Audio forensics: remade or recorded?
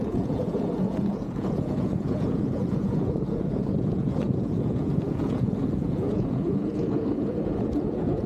remade